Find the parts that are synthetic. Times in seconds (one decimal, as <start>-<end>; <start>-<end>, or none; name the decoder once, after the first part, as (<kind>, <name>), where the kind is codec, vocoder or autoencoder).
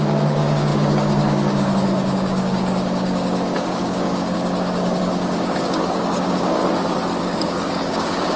0.0-6.6 (codec, DAC); 7.2-8.4